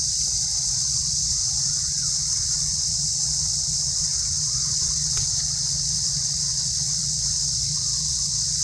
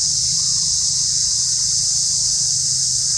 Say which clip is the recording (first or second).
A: second